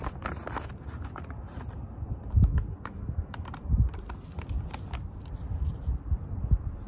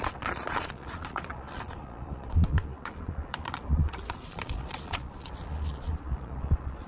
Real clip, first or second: first